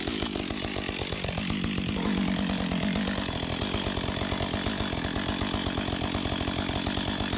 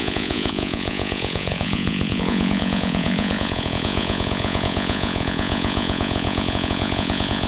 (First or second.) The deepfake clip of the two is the second